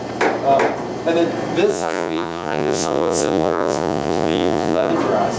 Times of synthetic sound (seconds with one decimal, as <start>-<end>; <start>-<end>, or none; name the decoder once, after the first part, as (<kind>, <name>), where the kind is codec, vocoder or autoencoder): 1.7-4.9 (vocoder, Vocos)